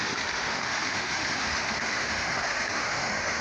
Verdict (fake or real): fake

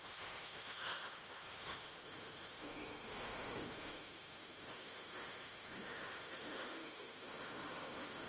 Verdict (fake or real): fake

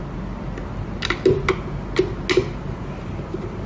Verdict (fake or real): real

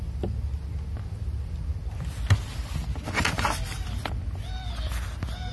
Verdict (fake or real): real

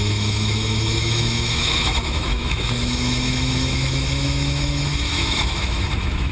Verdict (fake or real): fake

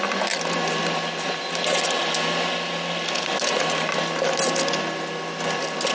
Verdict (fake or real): real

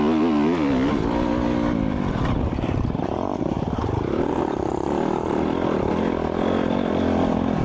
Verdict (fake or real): real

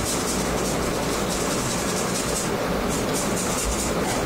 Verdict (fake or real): real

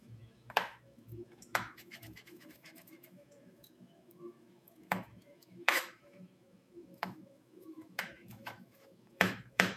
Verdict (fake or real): fake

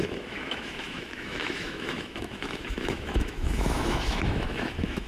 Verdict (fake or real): fake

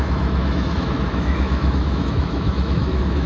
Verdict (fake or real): fake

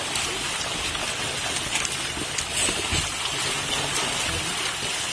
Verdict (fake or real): real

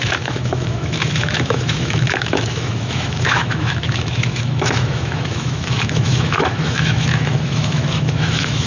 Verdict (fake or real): fake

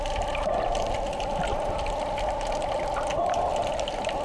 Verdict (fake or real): real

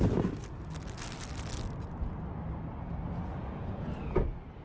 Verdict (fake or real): real